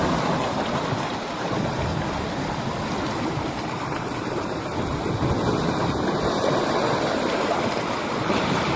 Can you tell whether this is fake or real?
fake